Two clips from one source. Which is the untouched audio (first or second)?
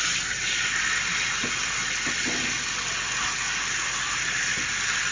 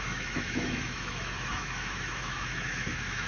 first